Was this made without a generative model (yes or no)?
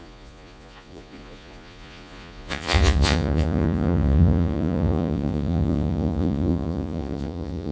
no